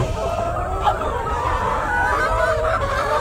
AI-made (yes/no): yes